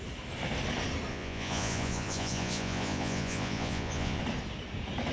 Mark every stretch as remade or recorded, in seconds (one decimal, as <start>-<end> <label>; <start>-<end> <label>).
0.0-1.1 recorded; 1.1-4.2 remade; 4.2-5.1 recorded